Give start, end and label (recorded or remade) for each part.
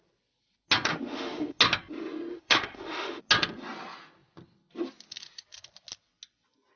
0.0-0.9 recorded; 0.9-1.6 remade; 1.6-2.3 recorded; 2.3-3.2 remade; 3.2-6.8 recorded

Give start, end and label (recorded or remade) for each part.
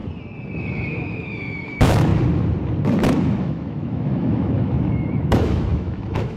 0.0-0.6 recorded; 0.6-2.1 remade; 2.1-3.4 recorded; 3.4-6.4 remade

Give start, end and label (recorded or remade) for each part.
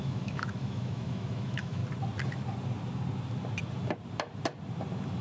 0.0-1.8 remade; 1.8-5.2 recorded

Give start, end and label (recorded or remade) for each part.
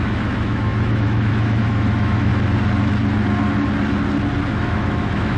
0.0-2.3 remade; 2.3-4.5 recorded; 4.5-5.4 remade